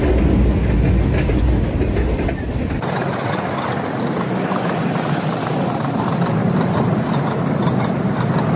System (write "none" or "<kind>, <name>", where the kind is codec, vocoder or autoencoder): none